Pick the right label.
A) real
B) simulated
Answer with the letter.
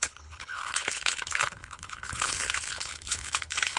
B